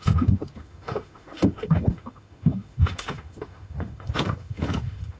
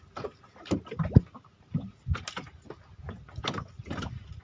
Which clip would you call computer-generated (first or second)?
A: first